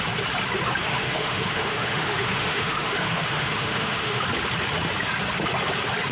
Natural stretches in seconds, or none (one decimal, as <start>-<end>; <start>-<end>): 0.0-0.9; 4.2-6.1